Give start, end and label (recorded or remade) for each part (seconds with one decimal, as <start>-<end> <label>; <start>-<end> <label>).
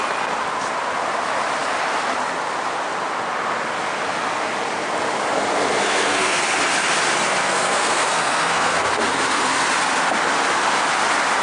0.0-5.8 recorded; 5.8-6.4 remade; 6.4-7.4 recorded; 7.4-8.9 remade; 8.9-11.4 recorded